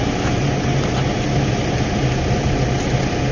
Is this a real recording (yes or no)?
yes